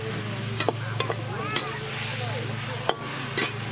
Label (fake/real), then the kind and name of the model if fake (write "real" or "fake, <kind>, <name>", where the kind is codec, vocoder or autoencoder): real